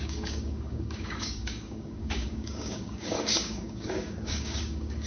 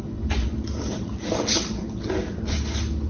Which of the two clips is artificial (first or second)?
first